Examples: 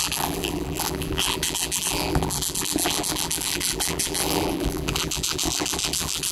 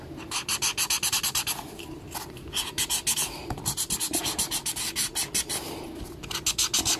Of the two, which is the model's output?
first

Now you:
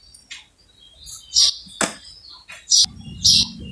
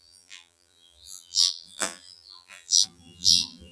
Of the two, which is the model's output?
second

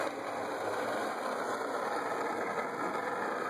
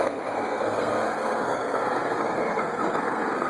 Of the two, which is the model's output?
second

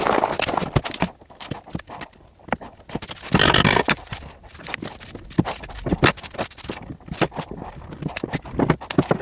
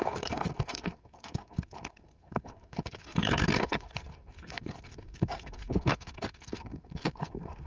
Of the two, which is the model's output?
second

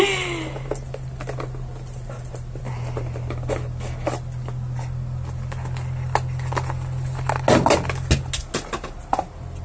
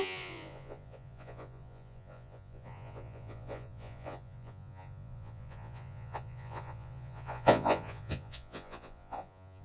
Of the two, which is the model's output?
second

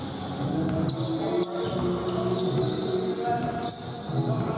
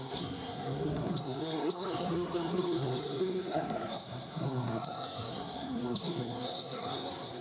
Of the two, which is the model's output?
second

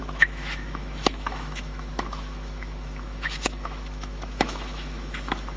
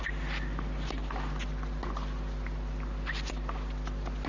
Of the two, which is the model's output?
first